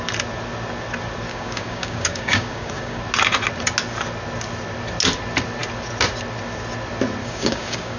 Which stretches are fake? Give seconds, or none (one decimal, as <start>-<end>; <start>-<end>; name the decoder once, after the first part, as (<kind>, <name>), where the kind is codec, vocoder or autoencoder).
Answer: 1.3-3.0 (codec, DAC); 7.2-8.0